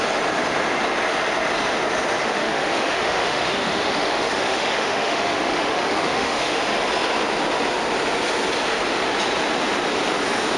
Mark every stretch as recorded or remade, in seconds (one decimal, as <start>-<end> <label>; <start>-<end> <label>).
0.0-2.2 recorded; 2.2-6.6 remade; 6.6-10.6 recorded